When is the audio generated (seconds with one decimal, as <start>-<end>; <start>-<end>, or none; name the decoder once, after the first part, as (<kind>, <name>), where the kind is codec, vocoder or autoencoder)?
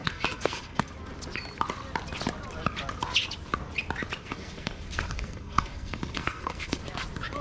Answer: 0.0-0.9 (codec, SNAC); 4.2-6.8